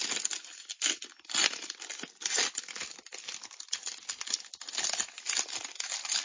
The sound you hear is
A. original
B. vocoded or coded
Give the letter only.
A